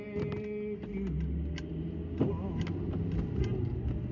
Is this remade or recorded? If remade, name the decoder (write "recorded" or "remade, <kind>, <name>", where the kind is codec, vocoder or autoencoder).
recorded